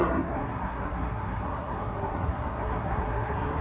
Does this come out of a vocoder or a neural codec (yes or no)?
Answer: yes